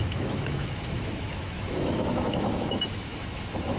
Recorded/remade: remade